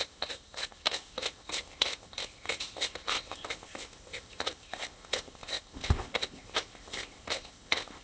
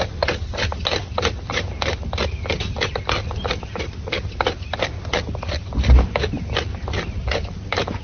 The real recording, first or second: second